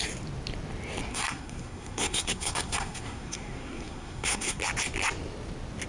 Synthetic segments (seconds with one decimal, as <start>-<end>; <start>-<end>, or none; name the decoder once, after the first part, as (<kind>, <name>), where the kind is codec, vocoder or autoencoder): 1.1-4.6 (codec, SNAC)